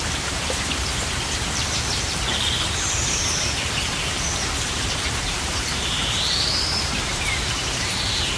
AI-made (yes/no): yes